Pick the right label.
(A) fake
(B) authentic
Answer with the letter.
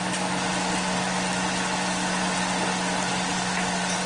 B